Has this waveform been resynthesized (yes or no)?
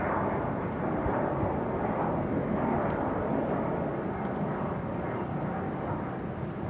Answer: no